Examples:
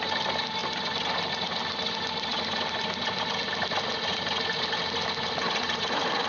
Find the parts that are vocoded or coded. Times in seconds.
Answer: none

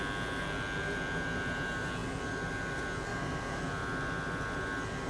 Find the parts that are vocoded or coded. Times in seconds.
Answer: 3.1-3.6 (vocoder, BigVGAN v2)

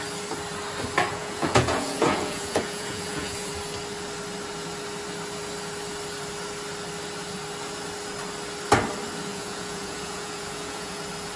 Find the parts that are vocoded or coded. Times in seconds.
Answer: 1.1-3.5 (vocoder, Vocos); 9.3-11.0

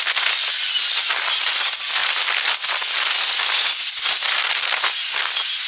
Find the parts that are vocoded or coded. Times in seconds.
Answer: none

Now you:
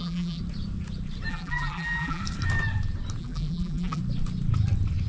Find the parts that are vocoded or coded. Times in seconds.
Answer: 0.0-0.4 (vocoder, BigVGAN v2); 1.3-2.2; 3.2-4.0

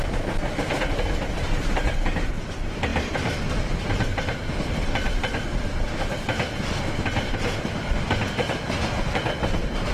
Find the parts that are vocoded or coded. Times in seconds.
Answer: none

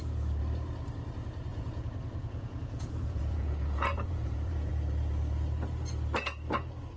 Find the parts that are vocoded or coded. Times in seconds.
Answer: 1.5-4.7 (vocoder, Vocos)